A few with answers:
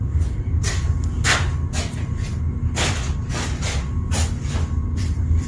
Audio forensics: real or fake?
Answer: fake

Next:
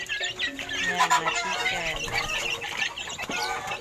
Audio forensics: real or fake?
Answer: real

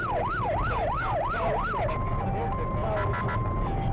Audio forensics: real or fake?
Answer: real